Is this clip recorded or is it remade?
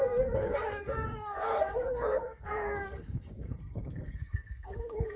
remade